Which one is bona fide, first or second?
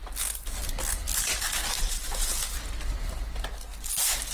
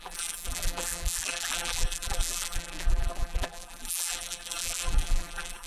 first